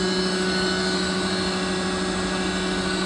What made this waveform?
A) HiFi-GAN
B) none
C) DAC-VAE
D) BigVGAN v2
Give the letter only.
B